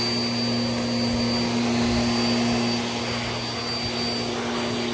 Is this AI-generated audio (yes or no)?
no